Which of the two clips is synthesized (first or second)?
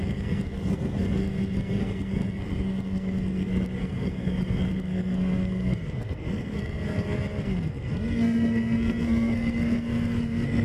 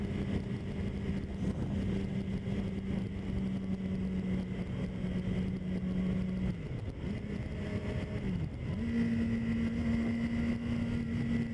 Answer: first